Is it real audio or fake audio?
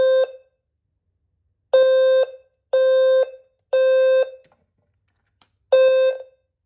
real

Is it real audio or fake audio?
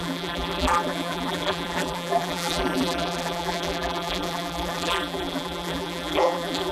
fake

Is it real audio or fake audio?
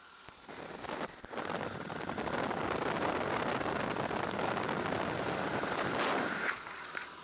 real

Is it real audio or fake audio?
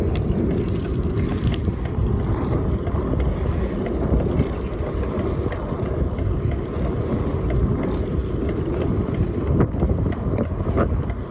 real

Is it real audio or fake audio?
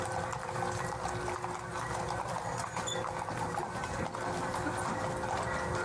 real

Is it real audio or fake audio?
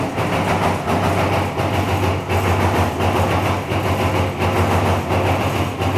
real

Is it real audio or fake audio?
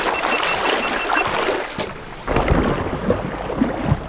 real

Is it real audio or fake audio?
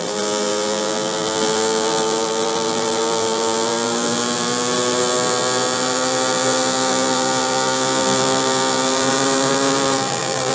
fake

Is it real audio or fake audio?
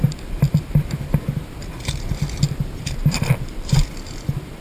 fake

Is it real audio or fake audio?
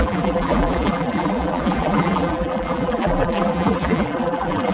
fake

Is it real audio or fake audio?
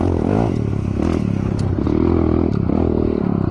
real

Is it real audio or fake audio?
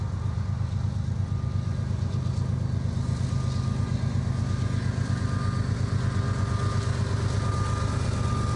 real